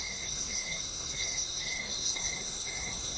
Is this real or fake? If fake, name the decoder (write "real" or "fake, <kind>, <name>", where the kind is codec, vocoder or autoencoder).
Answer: fake, codec, SNAC